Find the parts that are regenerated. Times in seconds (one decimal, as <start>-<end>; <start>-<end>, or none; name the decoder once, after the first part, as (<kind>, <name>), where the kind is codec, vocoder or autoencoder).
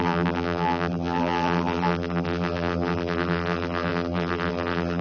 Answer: 0.0-5.0 (vocoder, BigVGAN v2)